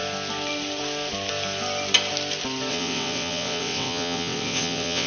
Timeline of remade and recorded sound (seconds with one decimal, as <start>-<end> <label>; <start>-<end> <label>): 0.0-2.7 recorded; 2.7-5.1 remade